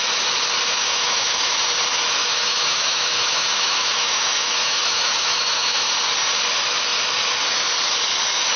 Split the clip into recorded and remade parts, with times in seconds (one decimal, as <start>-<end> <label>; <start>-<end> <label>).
0.0-0.8 recorded; 0.8-1.5 remade; 1.5-2.2 recorded; 2.2-5.9 remade; 5.9-8.6 recorded